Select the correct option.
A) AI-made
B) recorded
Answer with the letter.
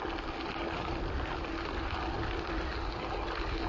B